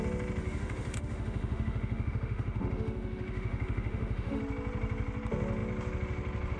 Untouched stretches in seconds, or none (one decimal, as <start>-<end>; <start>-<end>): 0.0-0.4; 4.4-6.6